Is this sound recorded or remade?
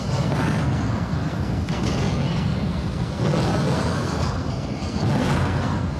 remade